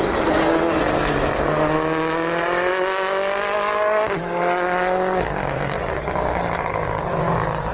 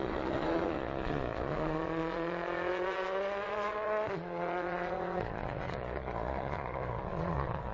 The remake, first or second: second